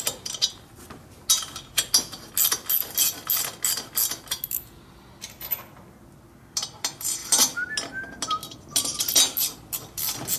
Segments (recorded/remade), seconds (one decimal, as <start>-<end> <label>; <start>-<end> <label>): 0.0-10.4 recorded